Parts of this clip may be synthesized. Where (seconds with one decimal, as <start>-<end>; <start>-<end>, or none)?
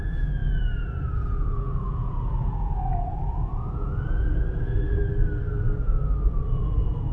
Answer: 0.0-5.0; 6.6-7.1